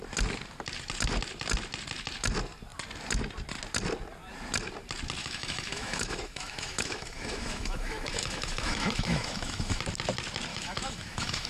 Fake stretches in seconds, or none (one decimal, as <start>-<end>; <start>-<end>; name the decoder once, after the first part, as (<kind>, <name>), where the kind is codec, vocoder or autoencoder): 5.2-9.8 (autoencoder, DAC-VAE); 10.5-11.5